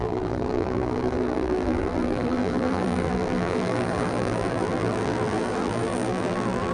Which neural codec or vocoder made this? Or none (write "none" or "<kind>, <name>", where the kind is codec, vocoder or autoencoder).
vocoder, BigVGAN v2